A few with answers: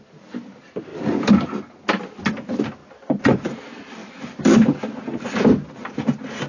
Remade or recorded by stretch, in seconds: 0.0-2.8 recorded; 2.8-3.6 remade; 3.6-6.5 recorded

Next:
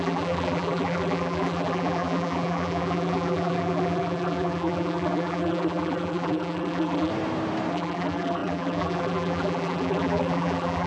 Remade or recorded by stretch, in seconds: 0.0-7.1 remade; 7.1-7.7 recorded; 7.7-10.9 remade

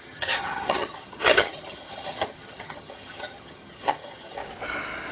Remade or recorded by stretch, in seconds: 0.0-4.4 remade; 4.4-5.1 recorded

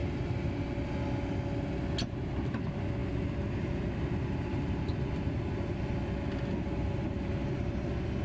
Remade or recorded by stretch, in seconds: 0.0-8.2 recorded

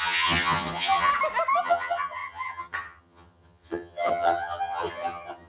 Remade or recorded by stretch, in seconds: 0.0-1.1 remade; 1.1-1.6 recorded; 1.6-5.5 remade

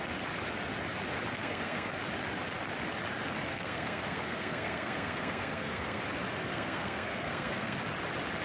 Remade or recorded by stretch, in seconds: 0.0-1.3 recorded; 1.3-1.9 remade; 1.9-3.5 recorded; 3.5-6.0 remade; 6.0-6.5 recorded; 6.5-7.8 remade; 7.8-8.4 recorded